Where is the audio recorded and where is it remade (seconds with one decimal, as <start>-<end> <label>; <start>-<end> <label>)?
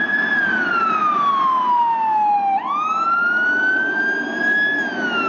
0.0-5.3 recorded